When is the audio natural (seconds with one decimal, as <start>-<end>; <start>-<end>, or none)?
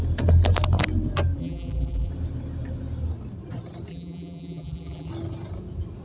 0.0-1.4; 2.1-3.9; 5.1-6.0